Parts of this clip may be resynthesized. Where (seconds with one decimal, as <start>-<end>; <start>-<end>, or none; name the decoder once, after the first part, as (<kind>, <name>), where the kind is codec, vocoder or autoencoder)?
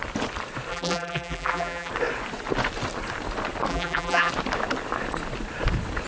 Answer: 0.7-1.9 (vocoder, BigVGAN v2); 3.7-4.3